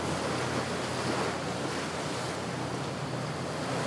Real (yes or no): yes